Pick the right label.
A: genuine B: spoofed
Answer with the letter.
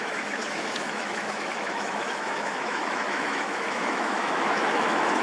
B